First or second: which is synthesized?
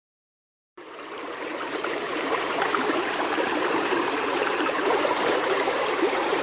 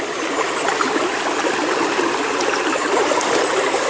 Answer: first